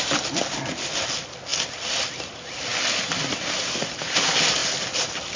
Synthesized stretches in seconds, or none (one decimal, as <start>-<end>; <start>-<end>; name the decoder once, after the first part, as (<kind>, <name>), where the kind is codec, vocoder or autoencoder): none